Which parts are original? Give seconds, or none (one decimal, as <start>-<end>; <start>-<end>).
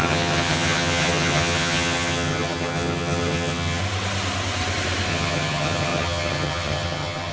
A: 3.8-5.1